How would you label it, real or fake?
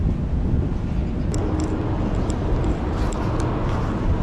real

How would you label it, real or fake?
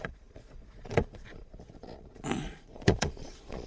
fake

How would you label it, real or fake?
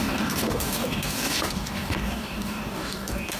fake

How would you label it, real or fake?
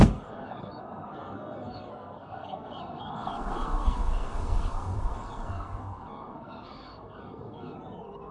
fake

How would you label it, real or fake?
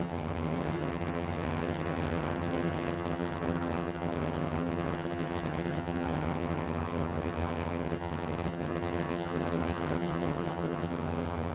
fake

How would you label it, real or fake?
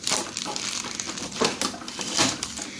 real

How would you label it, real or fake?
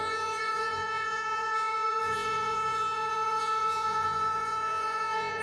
fake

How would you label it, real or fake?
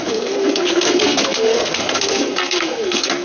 fake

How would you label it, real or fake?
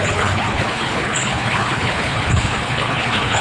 fake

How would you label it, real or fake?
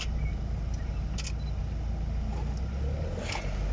real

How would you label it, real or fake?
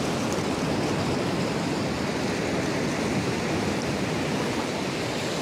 fake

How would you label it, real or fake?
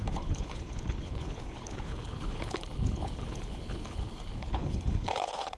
fake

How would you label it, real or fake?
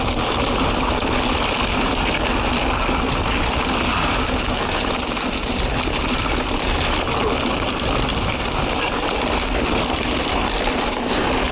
real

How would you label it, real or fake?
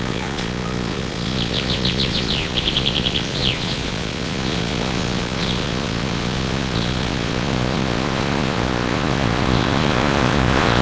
fake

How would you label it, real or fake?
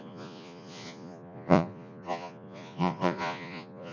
fake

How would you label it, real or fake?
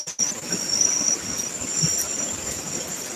real